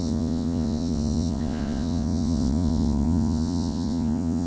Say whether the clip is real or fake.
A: fake